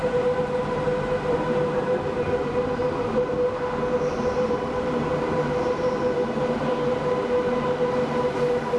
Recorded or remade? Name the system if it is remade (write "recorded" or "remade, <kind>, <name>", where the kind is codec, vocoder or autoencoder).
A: remade, vocoder, BigVGAN v2